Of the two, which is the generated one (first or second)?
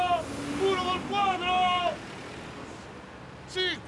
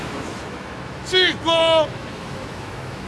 second